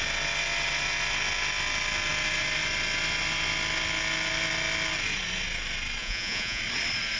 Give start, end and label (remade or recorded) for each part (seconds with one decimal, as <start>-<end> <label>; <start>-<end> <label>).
0.0-6.0 recorded; 6.0-6.6 remade; 6.6-7.2 recorded